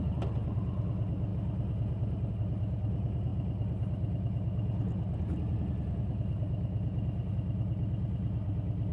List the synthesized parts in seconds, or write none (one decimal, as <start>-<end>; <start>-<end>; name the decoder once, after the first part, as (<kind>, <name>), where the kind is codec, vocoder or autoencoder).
none